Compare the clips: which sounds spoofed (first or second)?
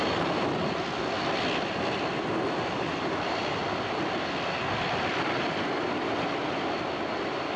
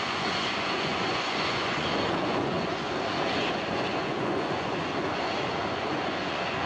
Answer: second